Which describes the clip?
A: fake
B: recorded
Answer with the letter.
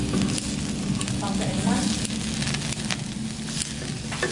B